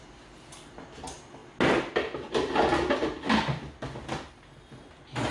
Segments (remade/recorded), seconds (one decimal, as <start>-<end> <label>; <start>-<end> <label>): 0.0-5.3 recorded